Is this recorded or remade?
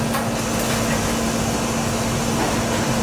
recorded